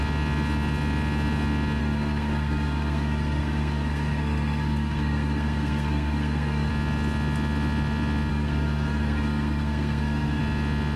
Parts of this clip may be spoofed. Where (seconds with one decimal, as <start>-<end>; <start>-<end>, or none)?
1.8-6.7; 8.3-10.4